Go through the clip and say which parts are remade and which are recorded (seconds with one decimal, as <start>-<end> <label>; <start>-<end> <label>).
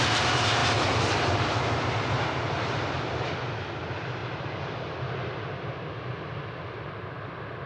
0.0-4.2 recorded; 4.2-5.9 remade; 5.9-7.7 recorded